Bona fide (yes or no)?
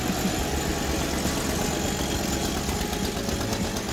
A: yes